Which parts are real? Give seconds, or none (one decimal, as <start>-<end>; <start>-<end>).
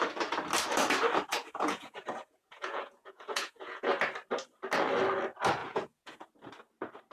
0.0-1.3; 3.9-5.6; 6.3-7.1